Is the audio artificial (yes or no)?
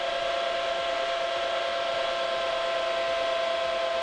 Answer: no